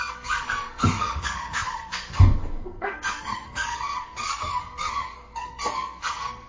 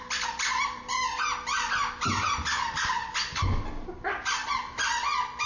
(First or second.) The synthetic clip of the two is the first